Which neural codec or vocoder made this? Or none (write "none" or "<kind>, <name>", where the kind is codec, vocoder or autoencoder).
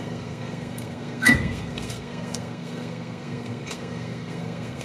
codec, SNAC